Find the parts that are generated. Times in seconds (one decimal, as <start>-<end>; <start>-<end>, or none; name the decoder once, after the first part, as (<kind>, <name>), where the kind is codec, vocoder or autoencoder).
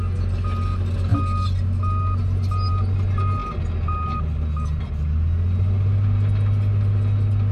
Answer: none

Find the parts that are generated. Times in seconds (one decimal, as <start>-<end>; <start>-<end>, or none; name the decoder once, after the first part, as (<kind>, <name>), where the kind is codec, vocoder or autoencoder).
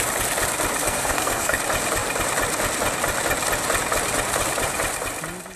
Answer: 0.8-1.6 (codec, SNAC)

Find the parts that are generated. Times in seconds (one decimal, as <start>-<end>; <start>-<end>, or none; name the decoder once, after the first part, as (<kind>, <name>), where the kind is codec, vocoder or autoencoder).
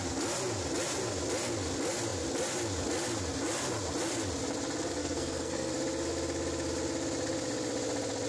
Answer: 5.0-5.7 (codec, SNAC)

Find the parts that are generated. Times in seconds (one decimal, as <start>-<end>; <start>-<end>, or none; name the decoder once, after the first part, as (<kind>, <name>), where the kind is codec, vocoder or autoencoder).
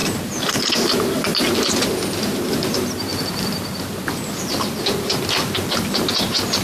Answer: none